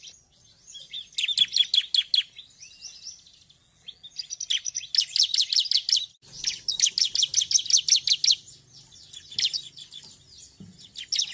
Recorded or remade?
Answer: recorded